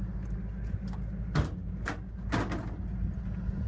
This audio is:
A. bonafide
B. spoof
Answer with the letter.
A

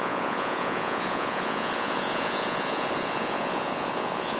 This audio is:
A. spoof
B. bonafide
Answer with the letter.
A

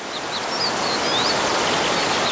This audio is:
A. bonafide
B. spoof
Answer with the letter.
A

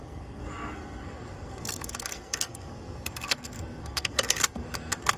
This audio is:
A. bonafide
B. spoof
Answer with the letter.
B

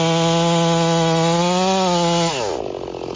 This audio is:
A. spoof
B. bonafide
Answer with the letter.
B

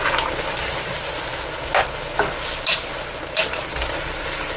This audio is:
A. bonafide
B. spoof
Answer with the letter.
A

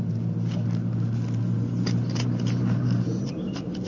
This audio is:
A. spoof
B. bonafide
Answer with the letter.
B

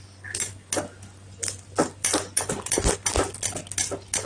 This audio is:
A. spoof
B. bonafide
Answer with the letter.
B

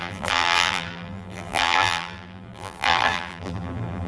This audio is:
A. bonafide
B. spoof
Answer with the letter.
B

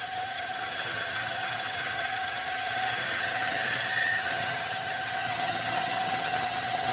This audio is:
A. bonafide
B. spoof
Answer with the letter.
B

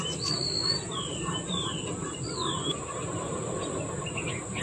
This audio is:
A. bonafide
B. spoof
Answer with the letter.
A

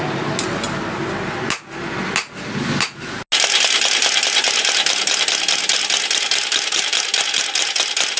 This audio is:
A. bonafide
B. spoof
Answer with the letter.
A